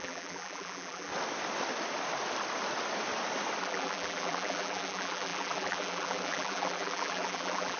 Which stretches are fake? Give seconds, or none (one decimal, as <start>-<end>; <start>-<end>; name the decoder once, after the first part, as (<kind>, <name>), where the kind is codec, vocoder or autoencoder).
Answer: 0.0-1.1 (vocoder, BigVGAN v2); 3.6-7.8